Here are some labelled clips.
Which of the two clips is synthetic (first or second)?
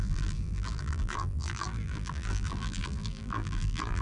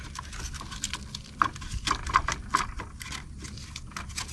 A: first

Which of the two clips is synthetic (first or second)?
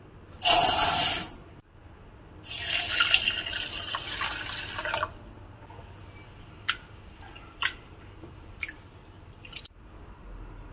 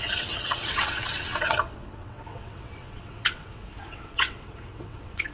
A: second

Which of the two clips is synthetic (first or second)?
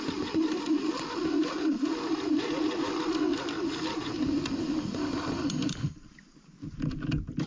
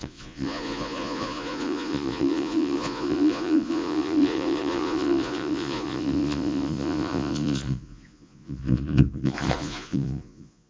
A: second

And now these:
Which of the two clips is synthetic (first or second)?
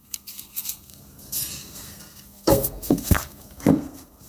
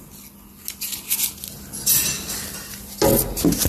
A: first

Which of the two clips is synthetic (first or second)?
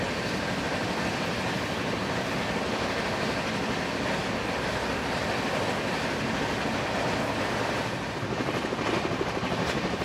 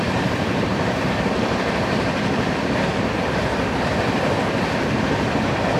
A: second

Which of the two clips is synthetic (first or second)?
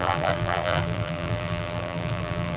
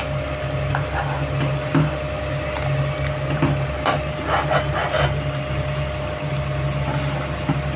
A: first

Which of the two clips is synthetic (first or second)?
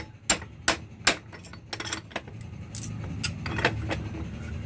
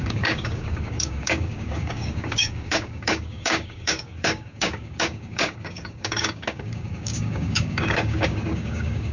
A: second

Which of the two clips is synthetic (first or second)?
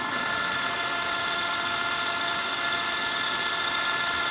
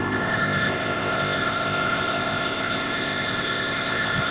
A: second